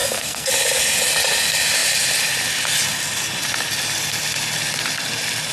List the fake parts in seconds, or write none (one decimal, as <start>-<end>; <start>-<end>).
0.0-0.5